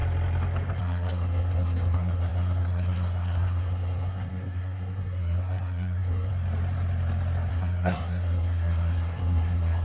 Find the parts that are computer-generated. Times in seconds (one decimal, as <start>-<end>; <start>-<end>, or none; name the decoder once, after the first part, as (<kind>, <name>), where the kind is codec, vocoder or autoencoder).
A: 0.8-6.3 (codec, SNAC); 7.5-9.8